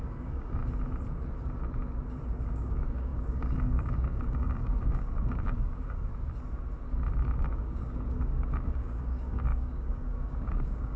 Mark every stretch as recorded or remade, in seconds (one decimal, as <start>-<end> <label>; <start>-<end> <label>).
0.0-0.6 remade; 0.6-2.4 recorded; 2.4-6.1 remade; 6.1-7.4 recorded; 7.4-11.0 remade

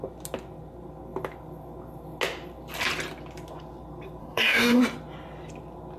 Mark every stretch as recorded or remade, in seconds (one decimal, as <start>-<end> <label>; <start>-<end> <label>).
0.0-4.2 recorded; 4.2-4.8 remade; 4.8-6.0 recorded